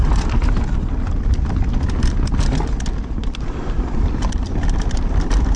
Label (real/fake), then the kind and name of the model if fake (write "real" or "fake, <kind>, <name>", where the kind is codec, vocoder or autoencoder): real